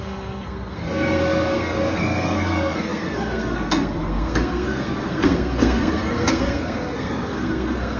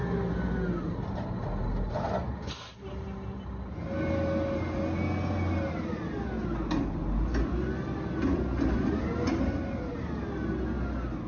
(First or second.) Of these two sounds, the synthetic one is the first